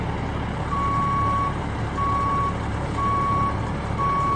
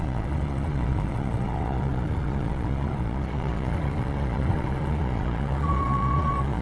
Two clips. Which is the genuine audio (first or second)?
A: first